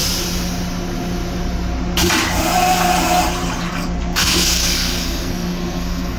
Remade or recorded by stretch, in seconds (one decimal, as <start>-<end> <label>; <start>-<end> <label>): 0.0-3.7 recorded; 3.7-6.2 remade